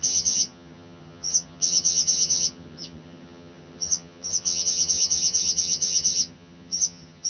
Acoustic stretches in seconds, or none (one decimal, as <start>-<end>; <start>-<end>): none